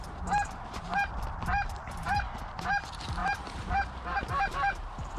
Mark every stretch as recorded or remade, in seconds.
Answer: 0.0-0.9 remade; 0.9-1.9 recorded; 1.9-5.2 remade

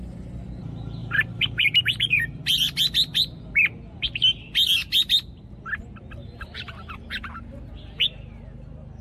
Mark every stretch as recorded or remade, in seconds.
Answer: 0.0-1.0 recorded; 1.0-2.4 remade; 2.4-9.0 recorded

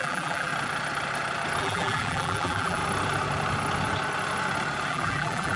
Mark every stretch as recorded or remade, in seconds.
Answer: 0.0-0.5 remade; 0.5-1.6 recorded; 1.6-2.8 remade; 2.8-4.9 recorded; 4.9-5.6 remade

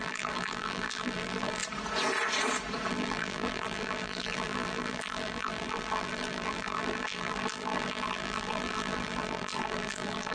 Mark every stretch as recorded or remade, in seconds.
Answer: 0.0-1.6 remade; 1.6-2.9 recorded; 2.9-10.3 remade

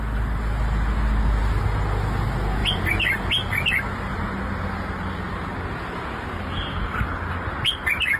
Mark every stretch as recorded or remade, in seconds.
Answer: 0.0-2.6 recorded; 2.6-3.8 remade; 3.8-8.2 recorded

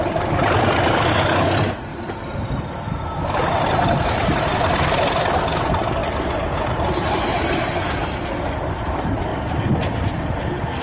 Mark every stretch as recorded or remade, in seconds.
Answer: 0.0-6.0 remade; 6.0-8.3 recorded; 8.3-10.8 remade